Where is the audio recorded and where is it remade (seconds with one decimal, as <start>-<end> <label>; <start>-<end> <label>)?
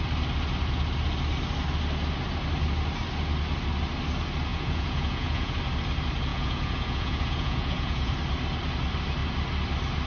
0.0-4.5 recorded; 4.5-5.6 remade; 5.6-6.3 recorded; 6.3-8.1 remade; 8.1-10.1 recorded